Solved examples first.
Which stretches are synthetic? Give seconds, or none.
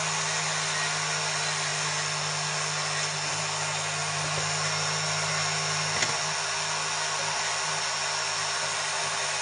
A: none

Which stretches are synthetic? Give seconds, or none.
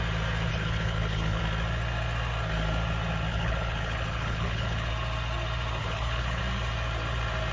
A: 0.5-1.4 (codec, HILCodec); 3.3-4.9; 5.8-6.4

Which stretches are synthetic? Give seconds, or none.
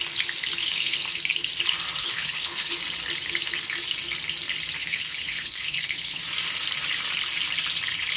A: 0.6-1.2 (codec, HILCodec); 2.0-2.8; 4.8-6.2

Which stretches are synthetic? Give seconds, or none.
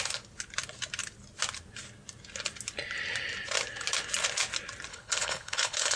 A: 4.9-6.0 (codec, HILCodec)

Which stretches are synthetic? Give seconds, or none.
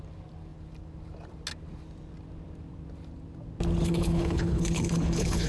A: 3.8-5.5 (codec, HILCodec)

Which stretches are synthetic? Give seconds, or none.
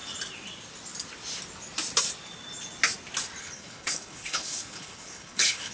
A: 3.4-5.7 (codec, HILCodec)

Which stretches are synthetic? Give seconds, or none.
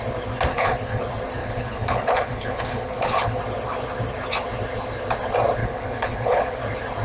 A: 0.5-1.0 (codec, HILCodec); 1.4-3.4; 5.6-6.6